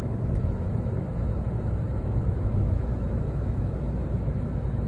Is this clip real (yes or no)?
no